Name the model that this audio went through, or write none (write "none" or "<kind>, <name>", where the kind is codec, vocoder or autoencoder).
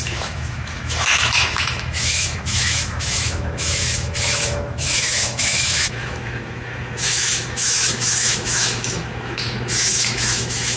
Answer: autoencoder, DAC-VAE